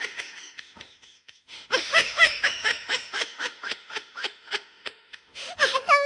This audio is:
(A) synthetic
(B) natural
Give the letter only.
A